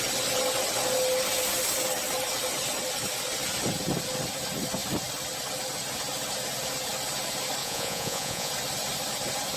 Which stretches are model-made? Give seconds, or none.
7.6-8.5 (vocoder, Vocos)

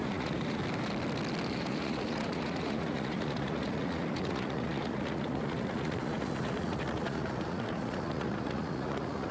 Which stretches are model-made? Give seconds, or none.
0.0-0.6 (vocoder, Vocos); 1.5-9.3

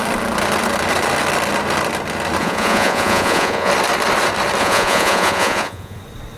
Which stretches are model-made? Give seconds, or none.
2.4-3.7 (vocoder, Vocos); 4.6-6.0

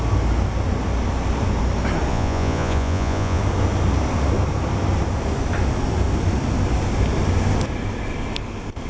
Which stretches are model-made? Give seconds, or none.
2.1-3.4 (vocoder, Vocos)

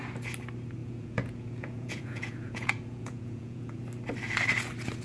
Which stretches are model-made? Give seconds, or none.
0.8-3.8 (vocoder, Vocos)